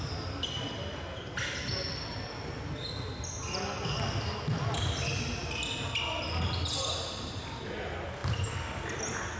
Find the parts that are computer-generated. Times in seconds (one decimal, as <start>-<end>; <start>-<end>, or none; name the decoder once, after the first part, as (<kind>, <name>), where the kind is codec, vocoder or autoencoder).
8.2-9.0 (vocoder, BigVGAN v2)